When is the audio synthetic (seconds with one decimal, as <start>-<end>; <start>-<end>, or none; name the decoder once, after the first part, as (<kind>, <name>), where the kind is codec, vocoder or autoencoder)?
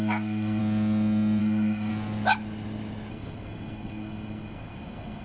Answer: 0.0-0.6 (codec, SNAC); 1.4-1.9; 3.1-5.2